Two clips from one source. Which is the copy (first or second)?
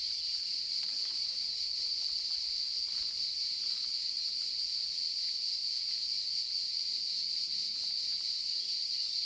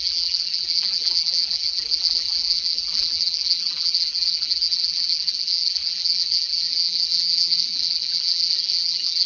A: second